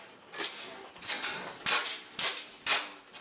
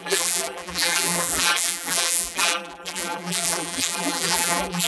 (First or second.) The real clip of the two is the first